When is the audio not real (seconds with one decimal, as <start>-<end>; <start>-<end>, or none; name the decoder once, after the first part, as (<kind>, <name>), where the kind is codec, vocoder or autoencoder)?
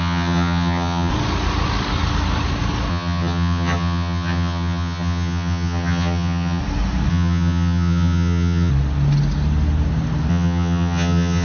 0.0-1.1 (vocoder, HiFi-GAN); 2.9-6.6; 7.1-8.7; 10.3-11.4